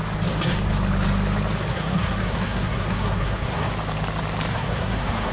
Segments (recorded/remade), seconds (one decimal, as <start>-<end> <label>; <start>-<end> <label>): 0.0-1.7 recorded; 1.7-3.7 remade; 3.7-4.5 recorded; 4.5-5.3 remade